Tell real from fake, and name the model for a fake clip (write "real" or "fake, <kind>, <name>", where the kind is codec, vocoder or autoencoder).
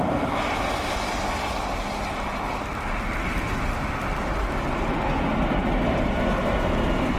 real